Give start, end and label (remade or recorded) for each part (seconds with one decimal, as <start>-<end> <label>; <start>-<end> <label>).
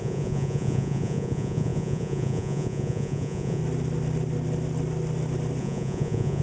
0.0-3.6 remade; 3.6-5.6 recorded; 5.6-6.4 remade